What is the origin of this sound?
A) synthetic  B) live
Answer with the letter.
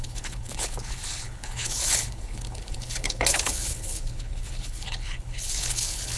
A